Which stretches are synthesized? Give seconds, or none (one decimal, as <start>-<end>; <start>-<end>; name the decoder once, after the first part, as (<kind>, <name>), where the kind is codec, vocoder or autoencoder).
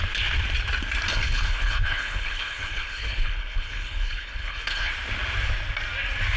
1.1-4.9 (codec, HILCodec)